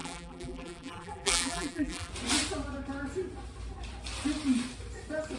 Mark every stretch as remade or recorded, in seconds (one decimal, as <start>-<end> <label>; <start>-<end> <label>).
0.0-2.1 remade; 2.1-5.4 recorded